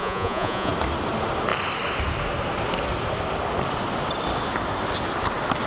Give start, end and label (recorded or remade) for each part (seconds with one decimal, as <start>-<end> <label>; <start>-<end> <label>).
0.0-0.7 remade; 0.7-5.7 recorded